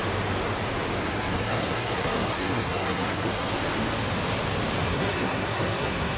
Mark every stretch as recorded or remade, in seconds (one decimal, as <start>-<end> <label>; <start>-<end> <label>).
0.0-1.0 recorded; 1.0-3.5 remade; 3.5-4.9 recorded; 4.9-6.2 remade